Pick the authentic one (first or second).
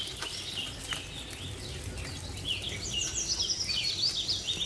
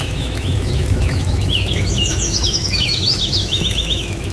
first